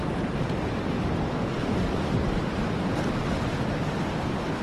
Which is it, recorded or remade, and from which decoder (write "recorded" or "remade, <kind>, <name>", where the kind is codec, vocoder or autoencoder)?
recorded